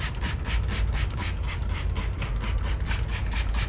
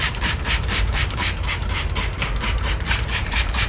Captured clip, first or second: first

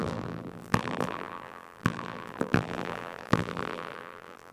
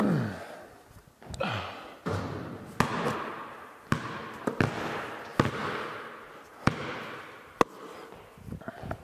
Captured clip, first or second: second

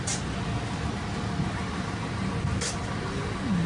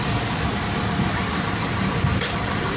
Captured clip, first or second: first